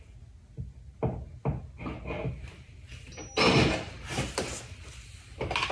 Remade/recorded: recorded